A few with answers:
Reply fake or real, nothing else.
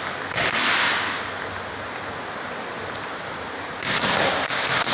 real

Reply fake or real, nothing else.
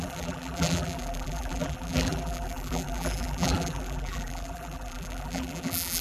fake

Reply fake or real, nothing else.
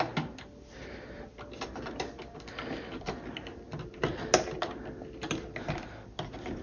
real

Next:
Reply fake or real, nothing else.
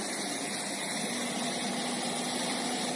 real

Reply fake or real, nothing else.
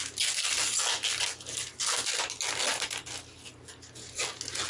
real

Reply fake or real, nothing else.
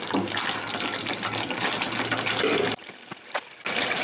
real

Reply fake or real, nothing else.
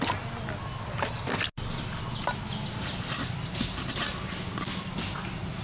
real